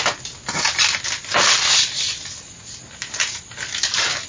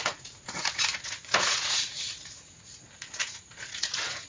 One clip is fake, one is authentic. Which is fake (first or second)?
second